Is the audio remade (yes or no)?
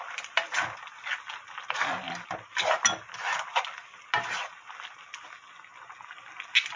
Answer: no